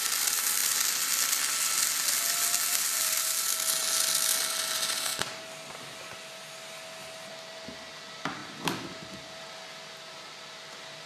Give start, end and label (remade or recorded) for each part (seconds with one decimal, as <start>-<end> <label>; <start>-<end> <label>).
0.0-11.1 recorded